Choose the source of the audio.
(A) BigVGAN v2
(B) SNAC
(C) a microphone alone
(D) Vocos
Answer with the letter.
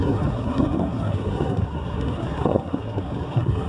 B